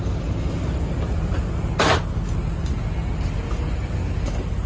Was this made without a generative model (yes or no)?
yes